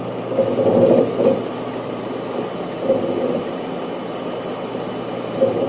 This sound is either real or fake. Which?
real